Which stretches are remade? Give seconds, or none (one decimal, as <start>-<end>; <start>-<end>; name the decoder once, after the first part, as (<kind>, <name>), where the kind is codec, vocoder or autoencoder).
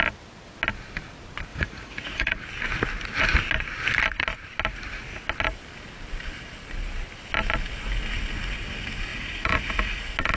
1.5-2.4 (vocoder, Vocos); 9.1-10.0